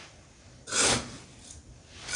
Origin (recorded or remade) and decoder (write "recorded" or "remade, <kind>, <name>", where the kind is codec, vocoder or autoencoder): recorded